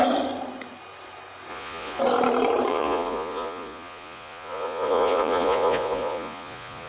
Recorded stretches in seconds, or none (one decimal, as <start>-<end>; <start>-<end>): 0.0-1.5; 2.0-2.7